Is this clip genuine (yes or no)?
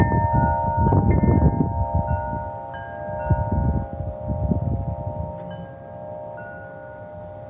yes